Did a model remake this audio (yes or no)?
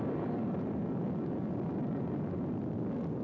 no